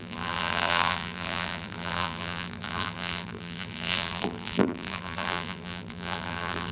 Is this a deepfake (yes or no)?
yes